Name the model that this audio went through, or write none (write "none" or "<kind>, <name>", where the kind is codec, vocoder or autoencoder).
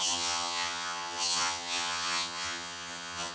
vocoder, HiFi-GAN